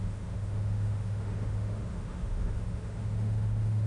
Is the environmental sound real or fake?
fake